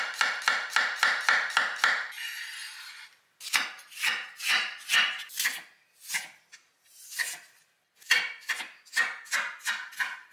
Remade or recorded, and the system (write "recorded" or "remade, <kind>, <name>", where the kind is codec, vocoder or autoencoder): recorded